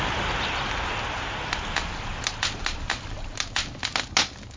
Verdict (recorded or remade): recorded